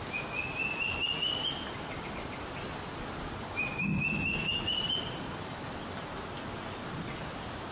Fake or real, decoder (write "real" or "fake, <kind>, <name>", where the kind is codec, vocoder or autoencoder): real